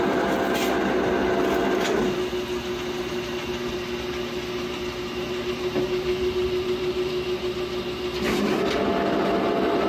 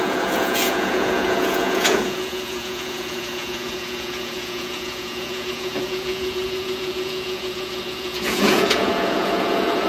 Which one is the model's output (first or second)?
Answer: second